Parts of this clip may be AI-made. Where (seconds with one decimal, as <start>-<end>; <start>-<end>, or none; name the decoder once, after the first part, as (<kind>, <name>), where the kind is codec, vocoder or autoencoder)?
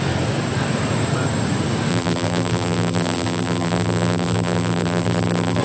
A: 1.9-5.6 (vocoder, BigVGAN v2)